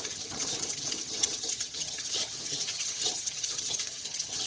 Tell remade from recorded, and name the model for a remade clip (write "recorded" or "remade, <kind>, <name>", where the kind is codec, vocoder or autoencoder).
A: remade, vocoder, HiFi-GAN